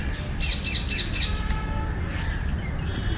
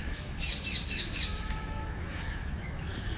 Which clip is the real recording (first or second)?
first